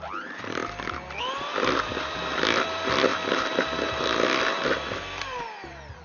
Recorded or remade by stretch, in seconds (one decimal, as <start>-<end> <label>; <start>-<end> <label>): 0.0-0.6 remade; 0.6-1.2 recorded; 1.2-6.0 remade